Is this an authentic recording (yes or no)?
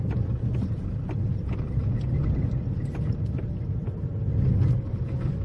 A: yes